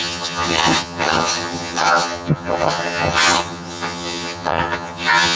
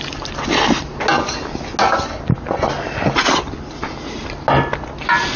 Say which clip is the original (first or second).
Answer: second